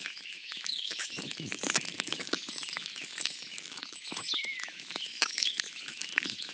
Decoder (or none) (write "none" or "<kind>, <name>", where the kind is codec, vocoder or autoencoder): autoencoder, DAC-VAE